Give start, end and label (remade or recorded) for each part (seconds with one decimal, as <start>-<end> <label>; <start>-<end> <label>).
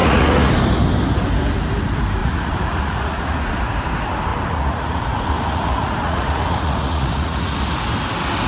0.0-0.5 remade; 0.5-2.2 recorded; 2.2-3.6 remade; 3.6-4.3 recorded; 4.3-7.6 remade; 7.6-8.5 recorded